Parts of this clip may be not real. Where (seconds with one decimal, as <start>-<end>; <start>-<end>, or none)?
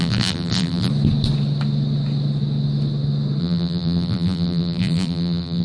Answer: 0.0-0.9; 3.4-5.6